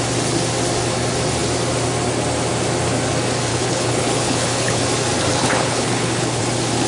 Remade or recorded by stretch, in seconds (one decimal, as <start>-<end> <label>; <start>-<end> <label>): 0.0-3.5 recorded; 3.5-4.8 remade; 4.8-5.4 recorded; 5.4-6.4 remade; 6.4-6.9 recorded